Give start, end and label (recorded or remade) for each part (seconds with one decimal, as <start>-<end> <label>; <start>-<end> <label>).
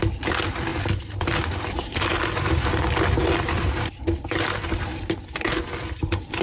0.0-0.7 recorded; 0.7-4.5 remade; 4.5-4.9 recorded; 4.9-5.5 remade; 5.5-6.4 recorded